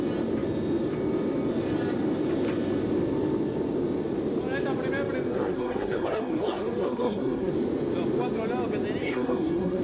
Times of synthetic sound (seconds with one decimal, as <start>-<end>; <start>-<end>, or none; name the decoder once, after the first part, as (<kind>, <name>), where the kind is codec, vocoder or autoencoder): 5.3-7.5 (codec, SNAC); 9.0-9.8